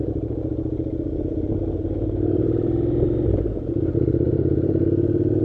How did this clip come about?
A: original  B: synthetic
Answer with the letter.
B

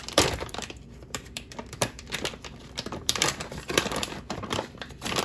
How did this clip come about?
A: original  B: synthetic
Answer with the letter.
B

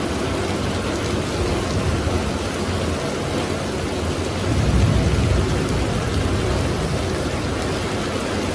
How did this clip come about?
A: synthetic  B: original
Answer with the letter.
B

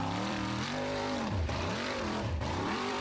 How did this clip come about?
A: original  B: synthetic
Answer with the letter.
B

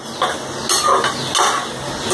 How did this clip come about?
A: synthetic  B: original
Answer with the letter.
B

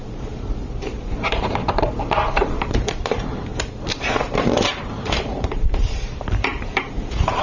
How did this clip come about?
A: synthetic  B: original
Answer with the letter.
A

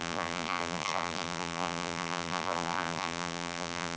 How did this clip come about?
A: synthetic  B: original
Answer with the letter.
A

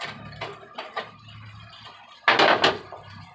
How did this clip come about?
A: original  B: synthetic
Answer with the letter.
A